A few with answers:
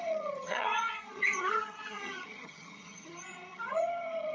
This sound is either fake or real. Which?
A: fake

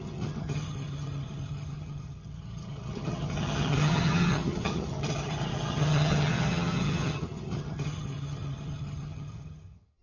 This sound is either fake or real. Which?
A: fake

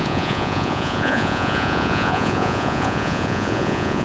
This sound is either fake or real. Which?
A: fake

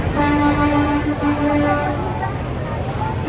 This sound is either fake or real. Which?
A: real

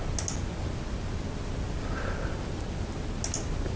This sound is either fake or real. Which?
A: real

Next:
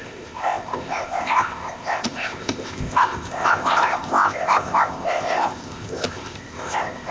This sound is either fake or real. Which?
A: fake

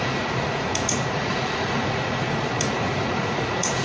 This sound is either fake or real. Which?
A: fake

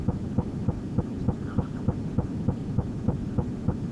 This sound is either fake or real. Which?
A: real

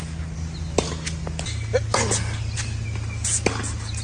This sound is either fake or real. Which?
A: real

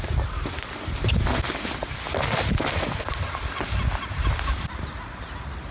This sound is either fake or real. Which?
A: real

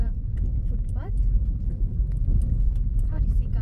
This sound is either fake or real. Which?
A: fake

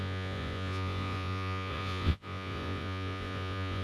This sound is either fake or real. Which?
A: fake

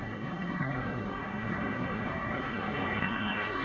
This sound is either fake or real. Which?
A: fake